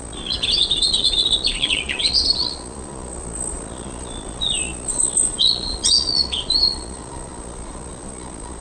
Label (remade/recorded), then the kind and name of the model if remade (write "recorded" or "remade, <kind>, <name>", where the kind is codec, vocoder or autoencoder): remade, vocoder, Vocos